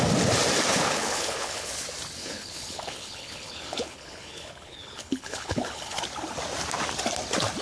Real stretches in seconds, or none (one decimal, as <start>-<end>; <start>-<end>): 0.0-0.7; 1.7-2.2; 6.0-7.6